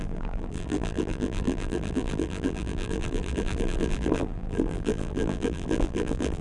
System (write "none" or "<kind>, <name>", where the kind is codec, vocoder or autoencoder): vocoder, BigVGAN v2